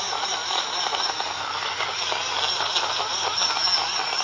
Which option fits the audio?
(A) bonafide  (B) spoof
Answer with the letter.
A